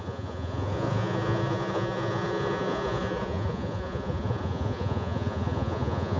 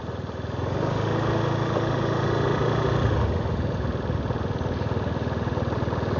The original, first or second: second